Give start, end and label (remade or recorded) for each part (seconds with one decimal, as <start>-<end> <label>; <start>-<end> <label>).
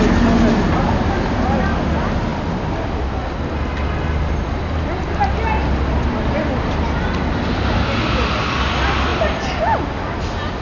0.0-10.6 recorded